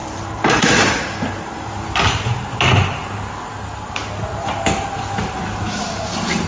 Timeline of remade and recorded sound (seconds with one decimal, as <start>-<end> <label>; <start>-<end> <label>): 0.0-1.7 remade; 1.7-6.5 recorded